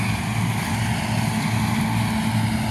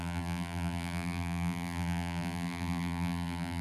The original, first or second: first